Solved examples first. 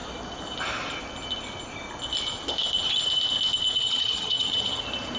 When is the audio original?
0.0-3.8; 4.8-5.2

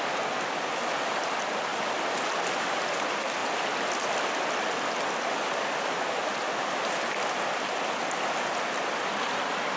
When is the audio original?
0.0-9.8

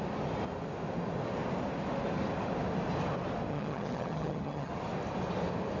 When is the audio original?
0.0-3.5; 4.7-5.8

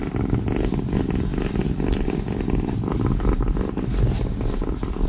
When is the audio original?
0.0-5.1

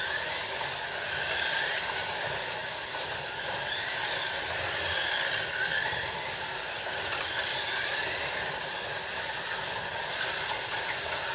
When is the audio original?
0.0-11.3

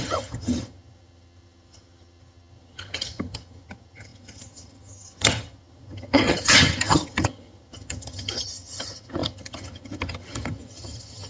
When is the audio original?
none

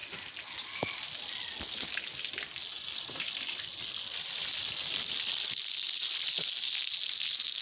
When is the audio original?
0.0-7.6